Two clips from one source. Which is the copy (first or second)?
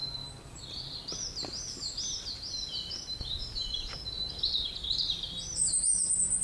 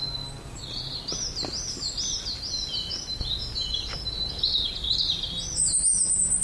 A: first